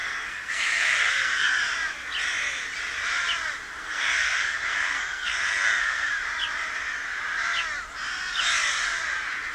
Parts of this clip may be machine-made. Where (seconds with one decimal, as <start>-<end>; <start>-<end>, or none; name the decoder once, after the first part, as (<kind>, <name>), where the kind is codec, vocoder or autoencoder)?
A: 0.0-1.5 (codec, SNAC); 3.8-6.1